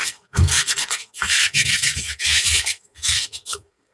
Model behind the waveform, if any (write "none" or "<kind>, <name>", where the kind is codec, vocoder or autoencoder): codec, SNAC